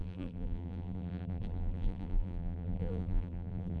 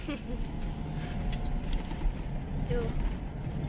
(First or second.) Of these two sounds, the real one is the second